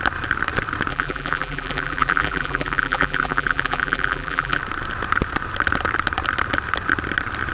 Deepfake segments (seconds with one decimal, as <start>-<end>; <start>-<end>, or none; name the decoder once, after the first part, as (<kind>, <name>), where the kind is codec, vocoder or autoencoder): 0.9-4.6 (vocoder, BigVGAN v2)